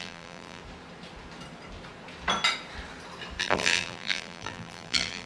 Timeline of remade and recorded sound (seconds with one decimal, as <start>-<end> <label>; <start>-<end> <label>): 0.0-0.6 remade; 0.6-3.4 recorded; 3.4-5.3 remade